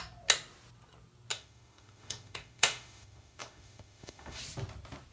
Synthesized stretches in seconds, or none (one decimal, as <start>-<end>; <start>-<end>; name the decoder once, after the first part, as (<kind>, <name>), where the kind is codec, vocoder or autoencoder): 1.3-4.4 (autoencoder, DAC-VAE)